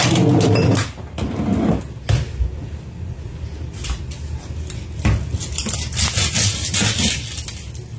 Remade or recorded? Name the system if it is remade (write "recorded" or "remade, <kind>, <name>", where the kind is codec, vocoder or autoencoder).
recorded